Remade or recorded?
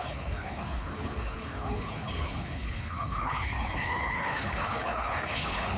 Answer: remade